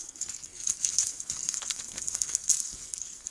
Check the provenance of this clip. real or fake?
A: fake